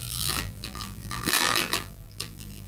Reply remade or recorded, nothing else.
remade